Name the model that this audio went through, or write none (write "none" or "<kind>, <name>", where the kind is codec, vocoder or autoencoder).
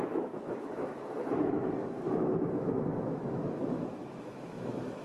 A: autoencoder, DAC-VAE